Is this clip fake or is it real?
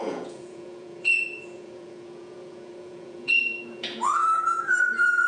fake